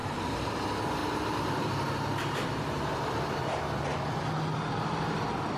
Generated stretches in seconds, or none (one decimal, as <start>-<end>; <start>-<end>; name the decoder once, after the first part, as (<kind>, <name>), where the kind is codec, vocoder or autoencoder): 0.0-0.5 (vocoder, BigVGAN v2); 1.0-4.2